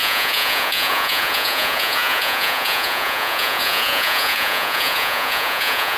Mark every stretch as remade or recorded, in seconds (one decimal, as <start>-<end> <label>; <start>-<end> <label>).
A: 0.0-6.0 remade